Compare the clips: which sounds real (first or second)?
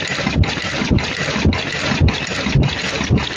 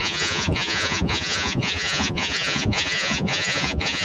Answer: first